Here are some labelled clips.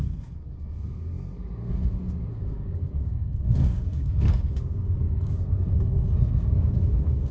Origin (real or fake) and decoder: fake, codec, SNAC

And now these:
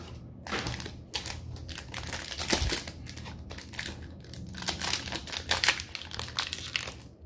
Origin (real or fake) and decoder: real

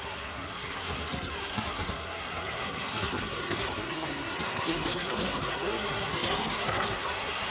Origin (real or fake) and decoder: fake, codec, SNAC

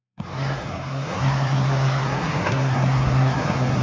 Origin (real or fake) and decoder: fake, codec, SNAC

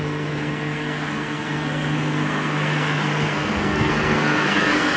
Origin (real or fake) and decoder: fake, codec, SNAC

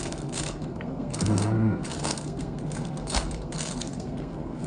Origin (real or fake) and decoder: fake, codec, SNAC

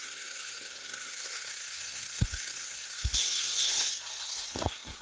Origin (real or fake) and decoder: fake, codec, SNAC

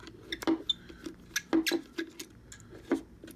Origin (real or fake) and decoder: real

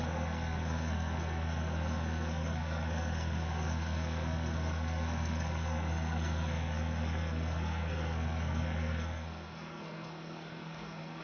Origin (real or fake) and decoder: fake, codec, SNAC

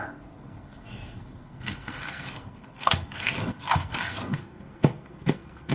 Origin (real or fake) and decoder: fake, codec, SNAC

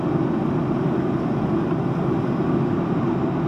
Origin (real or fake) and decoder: real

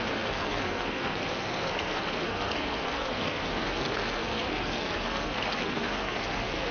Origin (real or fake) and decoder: fake, codec, SNAC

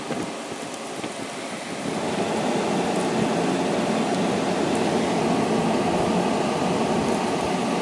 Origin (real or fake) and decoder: real